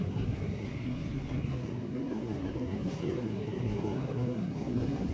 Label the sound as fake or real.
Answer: fake